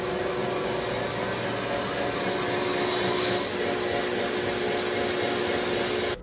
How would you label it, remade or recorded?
recorded